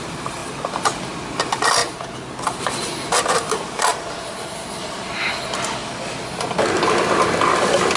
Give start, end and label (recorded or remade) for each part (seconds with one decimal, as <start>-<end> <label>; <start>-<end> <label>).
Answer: 0.0-3.9 recorded; 3.9-5.2 remade; 5.2-8.0 recorded